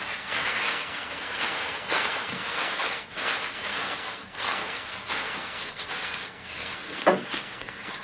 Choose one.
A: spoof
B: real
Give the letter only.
A